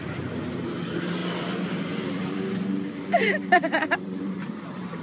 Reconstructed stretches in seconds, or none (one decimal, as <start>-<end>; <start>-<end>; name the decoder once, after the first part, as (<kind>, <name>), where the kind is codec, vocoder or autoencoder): 0.0-5.0 (vocoder, BigVGAN v2)